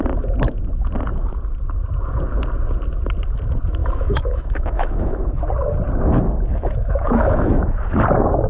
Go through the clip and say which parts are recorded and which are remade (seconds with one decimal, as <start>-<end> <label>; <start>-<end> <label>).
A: 0.0-3.8 recorded; 3.8-5.4 remade; 5.4-6.5 recorded; 6.5-7.6 remade; 7.6-8.5 recorded